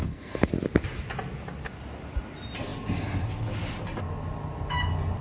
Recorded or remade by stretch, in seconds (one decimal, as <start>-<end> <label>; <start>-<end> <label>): 0.0-0.5 remade; 0.5-5.2 recorded